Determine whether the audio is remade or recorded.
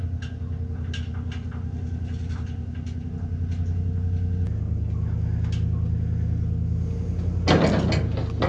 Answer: recorded